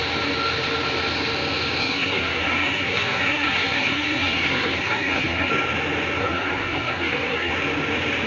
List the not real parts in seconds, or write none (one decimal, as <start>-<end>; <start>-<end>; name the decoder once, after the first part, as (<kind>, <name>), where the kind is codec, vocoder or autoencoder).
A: 1.8-5.5 (codec, SNAC); 6.2-7.5